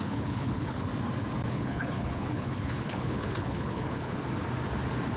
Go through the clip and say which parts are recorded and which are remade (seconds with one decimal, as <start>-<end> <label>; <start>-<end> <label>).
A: 0.0-0.9 remade; 0.9-1.5 recorded; 1.5-4.2 remade; 4.2-5.2 recorded